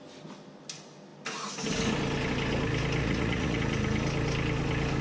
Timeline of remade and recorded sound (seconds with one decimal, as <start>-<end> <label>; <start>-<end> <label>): 0.0-3.0 recorded; 3.0-3.6 remade; 3.6-5.0 recorded